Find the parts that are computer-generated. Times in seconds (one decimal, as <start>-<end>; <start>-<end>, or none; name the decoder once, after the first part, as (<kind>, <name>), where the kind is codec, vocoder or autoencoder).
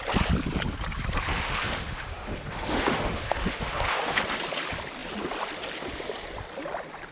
1.3-4.2 (autoencoder, DAC-VAE)